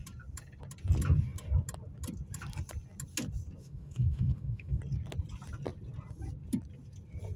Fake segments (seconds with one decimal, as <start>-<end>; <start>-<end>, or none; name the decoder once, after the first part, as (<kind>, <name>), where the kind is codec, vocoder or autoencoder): 3.6-4.8 (autoencoder, DAC-VAE)